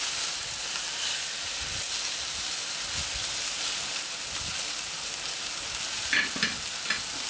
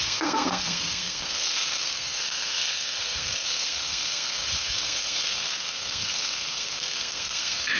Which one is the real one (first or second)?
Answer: first